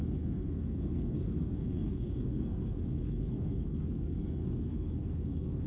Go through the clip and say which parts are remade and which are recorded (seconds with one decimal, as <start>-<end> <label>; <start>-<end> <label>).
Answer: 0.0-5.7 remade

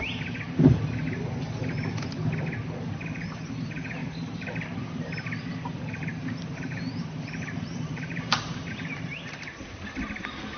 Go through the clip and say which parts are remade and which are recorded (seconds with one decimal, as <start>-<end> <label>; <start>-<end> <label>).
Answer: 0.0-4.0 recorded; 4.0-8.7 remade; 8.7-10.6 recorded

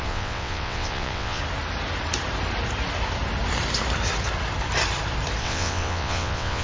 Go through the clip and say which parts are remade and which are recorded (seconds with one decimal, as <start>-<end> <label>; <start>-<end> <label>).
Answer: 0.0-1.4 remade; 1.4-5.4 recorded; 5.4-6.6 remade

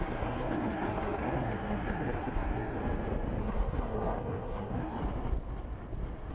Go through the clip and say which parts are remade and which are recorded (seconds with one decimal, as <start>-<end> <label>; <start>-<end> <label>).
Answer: 0.0-2.8 remade; 2.8-3.4 recorded; 3.4-5.0 remade; 5.0-6.3 recorded

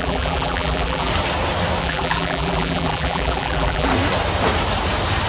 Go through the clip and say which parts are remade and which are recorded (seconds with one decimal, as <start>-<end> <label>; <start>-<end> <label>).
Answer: 0.0-1.1 remade; 1.1-1.8 recorded; 1.8-3.9 remade; 3.9-5.3 recorded

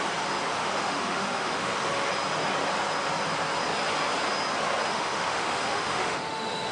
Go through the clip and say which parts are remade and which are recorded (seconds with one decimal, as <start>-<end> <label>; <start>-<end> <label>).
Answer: 0.0-0.6 recorded; 0.6-2.1 remade; 2.1-4.9 recorded; 4.9-6.7 remade